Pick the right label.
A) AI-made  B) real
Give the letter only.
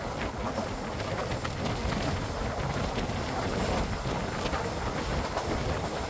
B